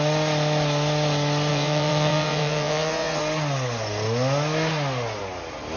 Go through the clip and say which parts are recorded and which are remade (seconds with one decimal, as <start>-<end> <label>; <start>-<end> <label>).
0.0-1.5 recorded; 1.5-3.2 remade; 3.2-5.8 recorded

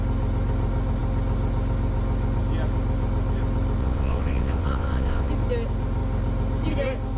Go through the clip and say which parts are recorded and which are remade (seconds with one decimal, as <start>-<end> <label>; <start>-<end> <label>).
0.0-3.8 recorded; 3.8-5.3 remade; 5.3-7.2 recorded

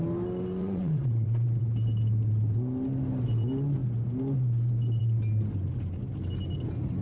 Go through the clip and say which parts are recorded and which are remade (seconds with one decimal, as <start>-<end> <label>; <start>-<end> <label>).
0.0-0.6 recorded; 0.6-1.6 remade; 1.6-7.0 recorded

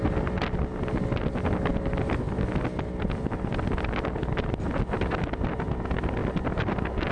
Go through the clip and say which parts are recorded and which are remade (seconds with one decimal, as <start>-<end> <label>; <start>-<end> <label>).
0.0-7.1 recorded

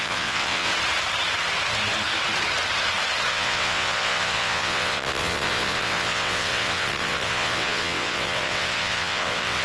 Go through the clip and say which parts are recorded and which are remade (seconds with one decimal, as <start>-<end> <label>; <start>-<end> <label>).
0.0-0.7 remade; 0.7-3.3 recorded; 3.3-9.6 remade

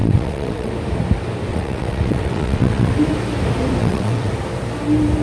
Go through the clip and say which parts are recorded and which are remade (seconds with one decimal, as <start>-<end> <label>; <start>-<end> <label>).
0.0-0.7 remade; 0.7-1.5 recorded; 1.5-2.9 remade; 2.9-3.8 recorded; 3.8-4.3 remade; 4.3-5.2 recorded